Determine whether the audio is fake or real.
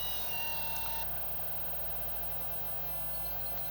real